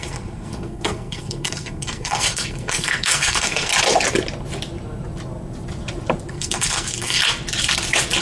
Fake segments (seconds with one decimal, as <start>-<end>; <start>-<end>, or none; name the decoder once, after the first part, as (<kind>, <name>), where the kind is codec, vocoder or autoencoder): 0.0-3.7 (codec, SNAC); 6.3-7.2